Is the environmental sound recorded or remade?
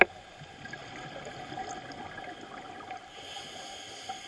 recorded